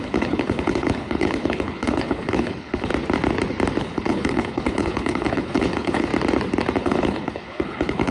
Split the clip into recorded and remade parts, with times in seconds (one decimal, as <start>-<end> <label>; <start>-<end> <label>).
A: 0.0-2.9 remade; 2.9-3.8 recorded; 3.8-6.1 remade; 6.1-6.8 recorded; 6.8-8.1 remade